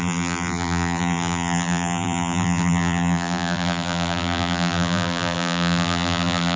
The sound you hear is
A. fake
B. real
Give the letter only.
A